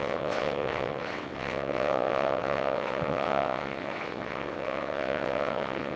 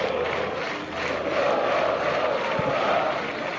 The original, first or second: second